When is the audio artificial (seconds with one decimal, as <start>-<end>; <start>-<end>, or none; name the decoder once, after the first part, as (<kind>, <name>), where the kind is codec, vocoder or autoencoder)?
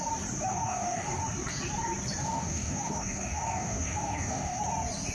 0.5-1.2 (codec, DAC); 2.2-4.6